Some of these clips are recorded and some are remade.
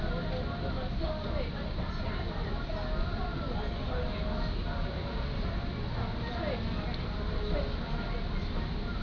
recorded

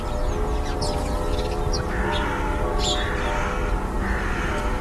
recorded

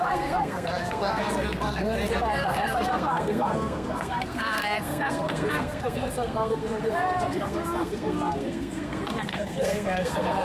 remade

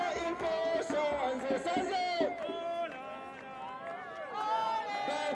recorded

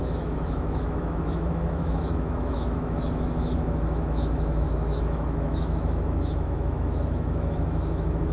remade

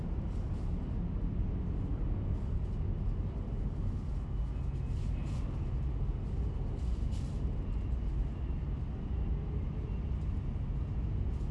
recorded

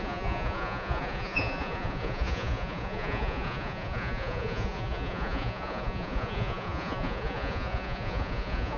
remade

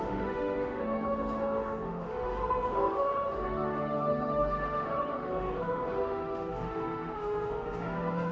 remade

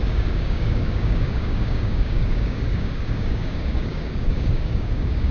remade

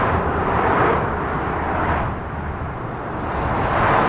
recorded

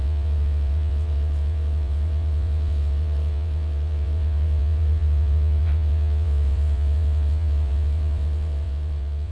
remade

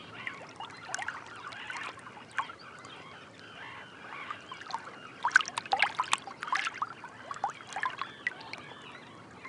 recorded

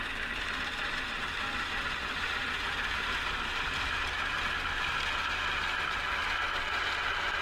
recorded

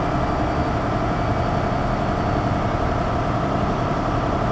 recorded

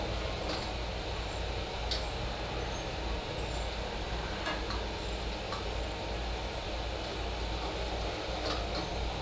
recorded